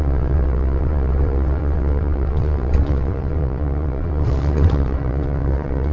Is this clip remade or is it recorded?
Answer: remade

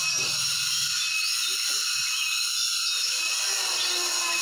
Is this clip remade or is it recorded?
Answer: recorded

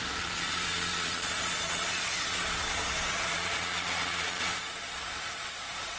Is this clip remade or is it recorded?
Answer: remade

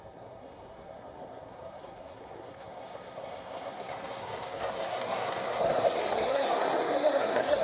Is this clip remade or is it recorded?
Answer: remade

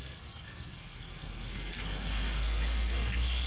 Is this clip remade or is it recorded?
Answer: remade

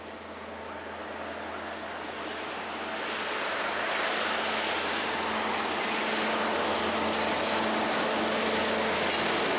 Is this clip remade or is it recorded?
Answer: recorded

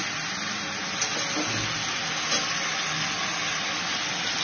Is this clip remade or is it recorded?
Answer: recorded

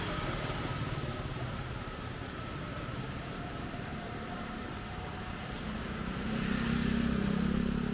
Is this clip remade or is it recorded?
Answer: remade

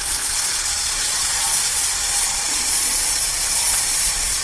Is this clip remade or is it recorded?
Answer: remade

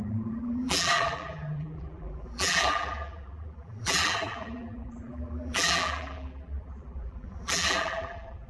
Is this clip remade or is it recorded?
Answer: remade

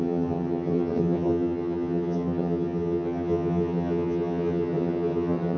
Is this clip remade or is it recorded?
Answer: remade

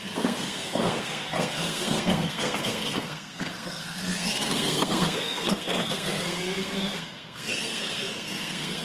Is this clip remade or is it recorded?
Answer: remade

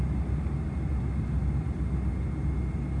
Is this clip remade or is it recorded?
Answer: recorded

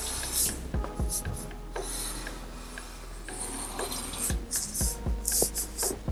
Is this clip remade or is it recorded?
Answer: recorded